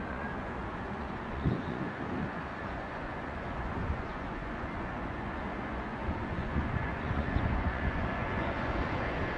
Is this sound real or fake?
fake